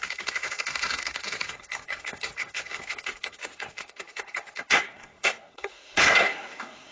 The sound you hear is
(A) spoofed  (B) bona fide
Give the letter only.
A